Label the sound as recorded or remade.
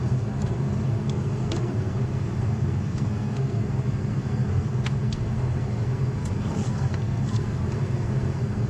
remade